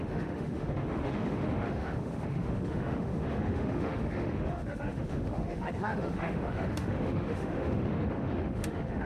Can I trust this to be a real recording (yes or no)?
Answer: no